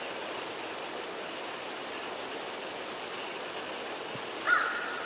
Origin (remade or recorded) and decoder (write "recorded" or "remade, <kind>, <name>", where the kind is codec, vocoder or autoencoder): recorded